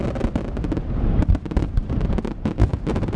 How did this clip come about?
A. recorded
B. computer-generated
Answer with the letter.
A